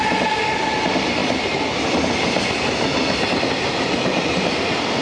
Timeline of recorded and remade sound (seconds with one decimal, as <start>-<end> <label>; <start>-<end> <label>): 0.0-5.0 recorded

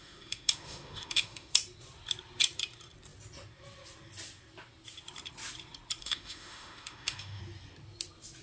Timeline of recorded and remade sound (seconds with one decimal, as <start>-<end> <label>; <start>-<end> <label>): 0.0-1.5 remade; 1.5-6.0 recorded; 6.0-7.4 remade; 7.4-8.4 recorded

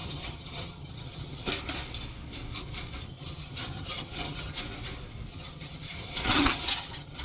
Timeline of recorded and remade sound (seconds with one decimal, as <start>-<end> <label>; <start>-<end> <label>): 0.0-1.5 remade; 1.5-3.1 recorded; 3.1-4.6 remade; 4.6-5.3 recorded; 5.3-7.2 remade

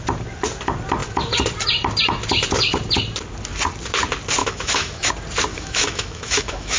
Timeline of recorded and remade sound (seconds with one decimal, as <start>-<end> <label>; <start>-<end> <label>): 0.0-4.4 recorded; 4.4-5.1 remade; 5.1-5.5 recorded; 5.5-6.8 remade

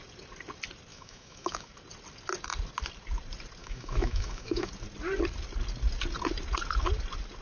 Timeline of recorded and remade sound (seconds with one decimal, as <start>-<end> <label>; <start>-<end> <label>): 0.0-0.9 recorded; 0.9-1.7 remade; 1.7-3.6 recorded; 3.6-4.7 remade; 4.7-7.4 recorded